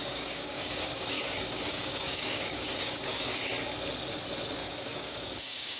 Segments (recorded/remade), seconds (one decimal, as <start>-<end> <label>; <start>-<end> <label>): 0.0-3.5 remade; 3.5-4.6 recorded; 4.6-5.8 remade